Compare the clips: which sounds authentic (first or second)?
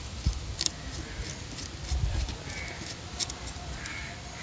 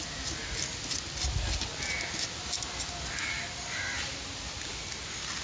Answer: second